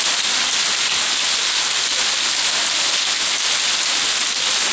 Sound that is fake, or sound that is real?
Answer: real